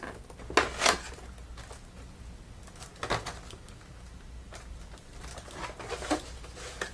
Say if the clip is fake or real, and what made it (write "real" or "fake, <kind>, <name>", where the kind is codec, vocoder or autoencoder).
real